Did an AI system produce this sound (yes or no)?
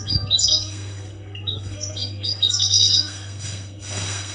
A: yes